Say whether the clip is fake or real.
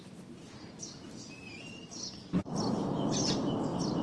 real